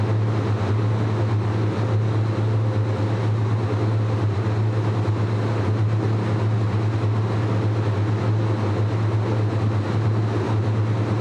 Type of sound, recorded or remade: recorded